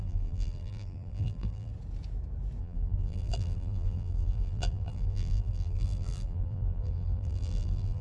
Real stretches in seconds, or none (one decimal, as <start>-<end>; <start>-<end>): 1.7-2.6